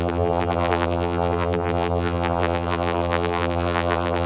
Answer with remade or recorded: remade